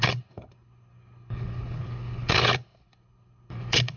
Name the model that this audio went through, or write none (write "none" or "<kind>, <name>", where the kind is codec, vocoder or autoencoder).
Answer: codec, HILCodec